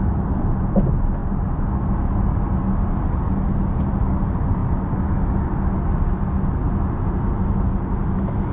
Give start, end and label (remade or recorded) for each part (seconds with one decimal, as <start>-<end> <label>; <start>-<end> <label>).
0.0-8.5 recorded